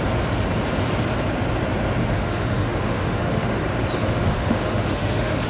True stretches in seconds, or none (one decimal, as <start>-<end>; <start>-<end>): 0.0-2.0; 3.6-4.0